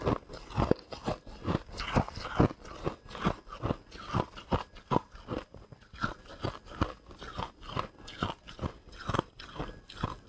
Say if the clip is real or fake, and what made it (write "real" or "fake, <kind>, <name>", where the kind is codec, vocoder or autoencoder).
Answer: real